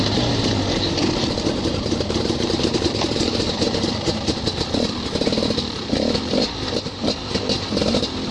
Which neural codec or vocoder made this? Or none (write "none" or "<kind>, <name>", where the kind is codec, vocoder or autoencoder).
vocoder, BigVGAN v2